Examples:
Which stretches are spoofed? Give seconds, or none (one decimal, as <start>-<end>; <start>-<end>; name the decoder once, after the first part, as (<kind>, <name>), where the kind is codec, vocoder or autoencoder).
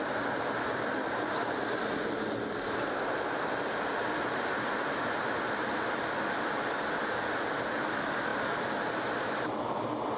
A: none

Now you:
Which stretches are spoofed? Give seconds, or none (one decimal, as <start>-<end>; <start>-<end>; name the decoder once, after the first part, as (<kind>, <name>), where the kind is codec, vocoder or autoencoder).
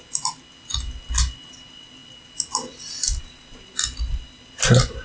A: none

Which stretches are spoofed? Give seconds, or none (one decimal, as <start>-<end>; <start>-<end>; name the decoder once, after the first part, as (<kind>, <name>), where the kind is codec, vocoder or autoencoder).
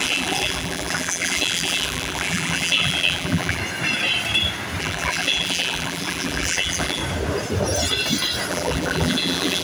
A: 0.0-3.6 (vocoder, BigVGAN v2); 4.8-7.0; 8.5-9.6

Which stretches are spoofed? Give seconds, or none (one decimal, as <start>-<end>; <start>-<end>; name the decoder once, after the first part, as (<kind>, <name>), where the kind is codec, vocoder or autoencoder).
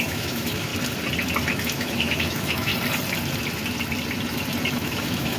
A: 0.0-0.7 (autoencoder, DAC-VAE); 1.5-2.7; 4.7-5.4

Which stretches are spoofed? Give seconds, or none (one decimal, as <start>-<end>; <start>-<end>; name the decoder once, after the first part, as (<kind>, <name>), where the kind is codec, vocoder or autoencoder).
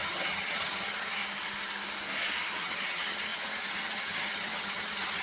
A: 0.0-1.2 (vocoder, HiFi-GAN); 2.4-5.2